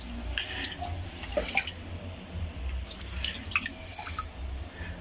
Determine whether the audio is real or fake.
real